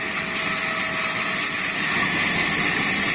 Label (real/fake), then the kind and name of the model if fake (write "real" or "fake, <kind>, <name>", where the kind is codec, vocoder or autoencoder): real